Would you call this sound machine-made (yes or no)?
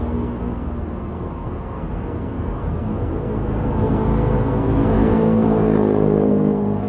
yes